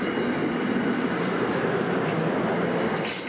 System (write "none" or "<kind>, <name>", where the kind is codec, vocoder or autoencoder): none